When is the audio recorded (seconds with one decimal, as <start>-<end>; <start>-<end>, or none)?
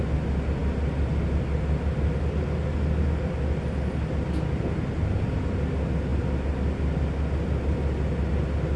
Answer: 0.0-8.8